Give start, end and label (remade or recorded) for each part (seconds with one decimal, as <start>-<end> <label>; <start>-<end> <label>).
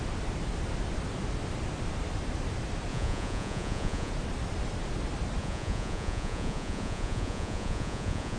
0.0-2.9 recorded; 2.9-4.1 remade; 4.1-5.4 recorded; 5.4-8.4 remade